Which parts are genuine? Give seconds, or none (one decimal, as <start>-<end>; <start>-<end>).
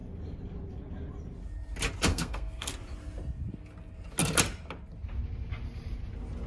0.0-2.1; 2.7-6.5